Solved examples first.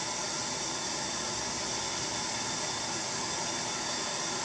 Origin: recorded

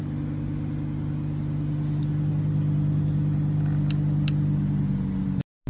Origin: recorded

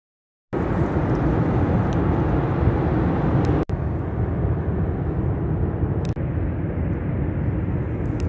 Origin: recorded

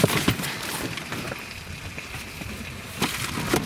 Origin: recorded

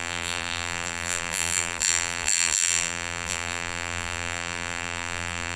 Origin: remade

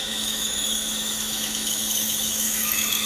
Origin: remade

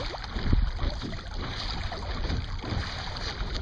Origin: recorded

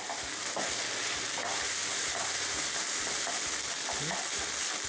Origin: recorded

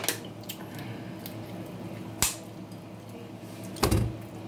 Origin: recorded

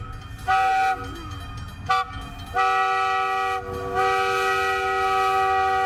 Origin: recorded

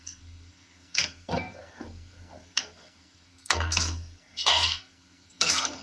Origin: remade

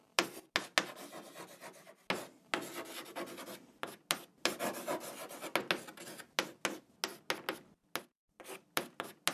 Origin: recorded